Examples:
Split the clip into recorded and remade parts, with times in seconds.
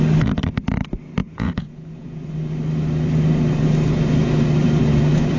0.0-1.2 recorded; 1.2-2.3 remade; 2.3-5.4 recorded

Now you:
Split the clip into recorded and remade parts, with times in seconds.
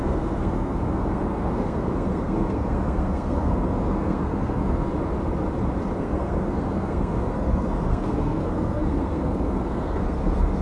0.0-4.9 remade; 4.9-6.0 recorded; 6.0-10.6 remade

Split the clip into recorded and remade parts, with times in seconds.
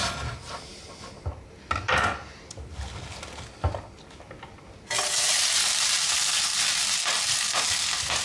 0.0-8.2 recorded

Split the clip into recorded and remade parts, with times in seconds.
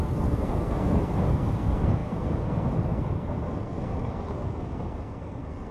0.0-5.7 remade